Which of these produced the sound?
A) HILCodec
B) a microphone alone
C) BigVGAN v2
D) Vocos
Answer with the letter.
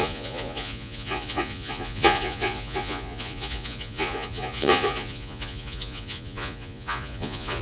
D